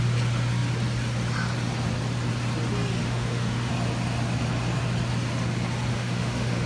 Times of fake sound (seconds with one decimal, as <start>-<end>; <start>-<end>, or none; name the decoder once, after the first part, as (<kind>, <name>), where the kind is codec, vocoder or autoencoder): 3.0-3.7 (autoencoder, DAC-VAE); 5.9-6.7